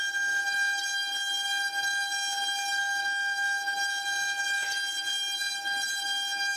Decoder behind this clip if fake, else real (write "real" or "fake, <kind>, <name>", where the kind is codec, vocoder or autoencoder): real